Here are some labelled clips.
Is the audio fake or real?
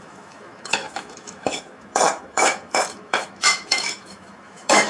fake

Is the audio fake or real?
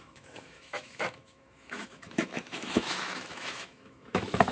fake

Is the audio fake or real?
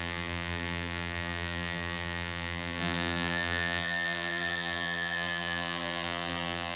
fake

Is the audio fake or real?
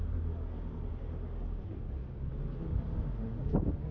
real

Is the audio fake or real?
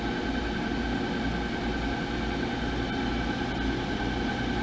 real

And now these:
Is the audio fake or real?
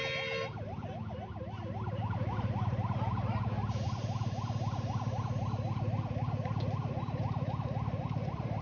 real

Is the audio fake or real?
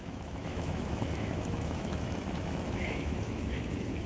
fake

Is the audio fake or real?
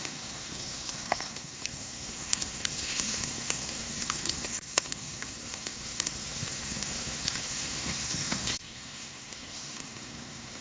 fake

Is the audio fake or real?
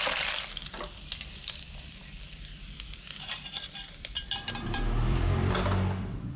fake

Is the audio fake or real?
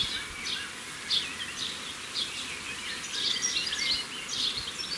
real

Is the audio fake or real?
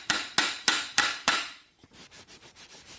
fake